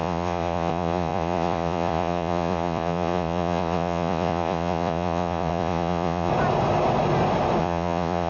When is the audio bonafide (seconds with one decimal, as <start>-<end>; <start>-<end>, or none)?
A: 6.3-7.6